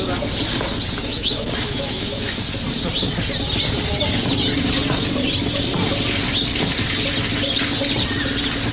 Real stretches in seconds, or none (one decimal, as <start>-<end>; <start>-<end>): 0.0-1.1; 2.3-8.7